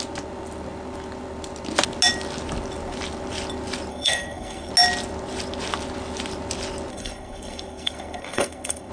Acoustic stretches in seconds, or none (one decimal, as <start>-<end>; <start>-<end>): 0.0-3.9; 4.7-6.9